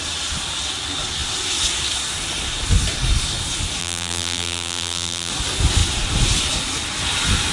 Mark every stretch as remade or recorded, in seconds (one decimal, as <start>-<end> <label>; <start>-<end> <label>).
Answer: 0.0-3.8 recorded; 3.8-5.3 remade; 5.3-7.5 recorded